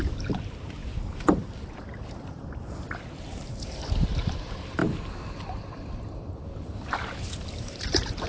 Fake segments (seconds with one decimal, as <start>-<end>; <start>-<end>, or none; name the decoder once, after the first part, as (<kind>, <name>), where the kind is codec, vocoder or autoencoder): 0.0-4.8 (vocoder, BigVGAN v2); 7.5-8.3